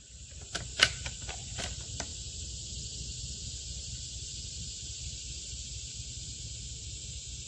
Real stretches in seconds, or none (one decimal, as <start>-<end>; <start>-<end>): 0.0-7.5